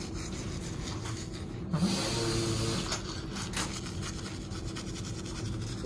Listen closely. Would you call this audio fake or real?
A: real